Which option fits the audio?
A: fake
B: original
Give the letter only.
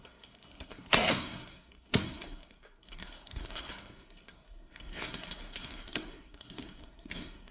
A